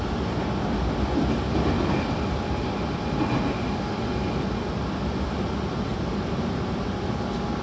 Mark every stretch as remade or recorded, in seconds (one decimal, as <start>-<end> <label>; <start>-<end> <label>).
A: 0.0-7.6 recorded